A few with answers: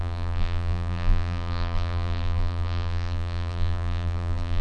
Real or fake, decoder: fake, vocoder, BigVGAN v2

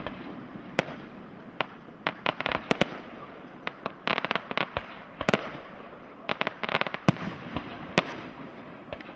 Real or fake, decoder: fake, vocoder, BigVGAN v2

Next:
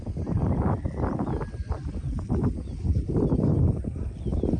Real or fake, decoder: real